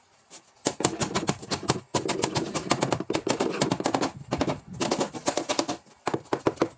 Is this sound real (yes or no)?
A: yes